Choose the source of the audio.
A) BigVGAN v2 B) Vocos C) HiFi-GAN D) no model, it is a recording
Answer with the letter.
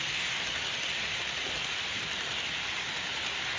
A